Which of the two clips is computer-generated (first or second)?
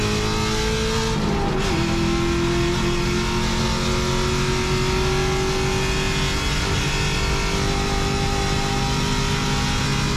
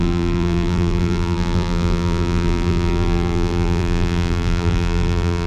second